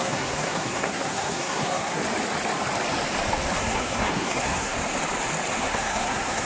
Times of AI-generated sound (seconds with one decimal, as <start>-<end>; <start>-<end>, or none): 0.0-2.0; 3.6-4.7; 5.6-6.5